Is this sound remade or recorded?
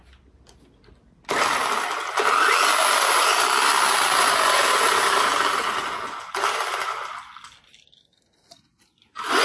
recorded